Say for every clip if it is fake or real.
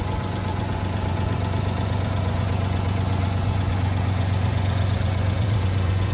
fake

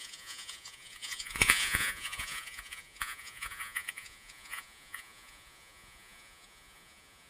fake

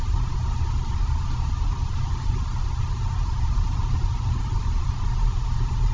real